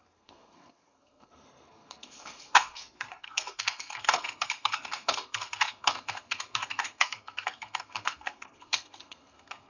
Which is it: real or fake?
fake